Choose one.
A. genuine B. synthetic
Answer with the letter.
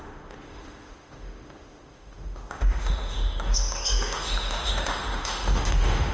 B